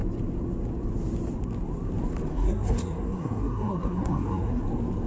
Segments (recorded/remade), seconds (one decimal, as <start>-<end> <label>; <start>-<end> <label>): 0.0-2.3 recorded; 2.3-4.6 remade; 4.6-5.1 recorded